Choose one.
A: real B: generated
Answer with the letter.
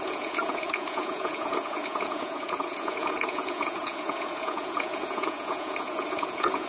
B